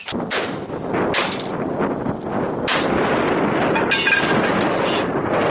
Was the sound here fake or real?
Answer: real